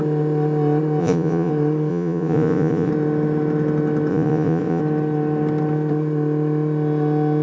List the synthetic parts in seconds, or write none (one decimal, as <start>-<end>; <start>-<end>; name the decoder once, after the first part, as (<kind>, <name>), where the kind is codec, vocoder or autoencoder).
1.0-1.5 (vocoder, Vocos); 1.9-2.9; 4.1-4.8